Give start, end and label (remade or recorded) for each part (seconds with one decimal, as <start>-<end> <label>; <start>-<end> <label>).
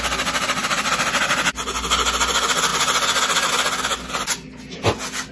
0.0-5.3 recorded